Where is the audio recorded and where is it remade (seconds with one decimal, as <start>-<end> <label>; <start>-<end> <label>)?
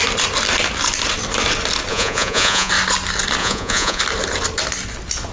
0.0-1.9 recorded; 1.9-2.7 remade; 2.7-3.4 recorded; 3.4-4.0 remade; 4.0-5.3 recorded